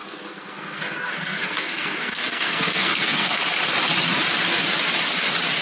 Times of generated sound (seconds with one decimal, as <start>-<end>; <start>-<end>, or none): 0.0-3.4